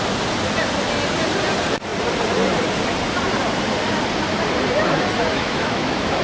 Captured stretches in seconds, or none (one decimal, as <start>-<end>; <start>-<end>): 0.0-5.3